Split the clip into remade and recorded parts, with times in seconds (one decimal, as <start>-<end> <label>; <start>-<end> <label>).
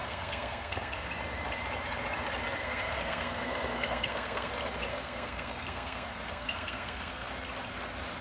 0.0-1.1 remade; 1.1-2.6 recorded; 2.6-4.5 remade; 4.5-4.9 recorded; 4.9-7.3 remade; 7.3-8.2 recorded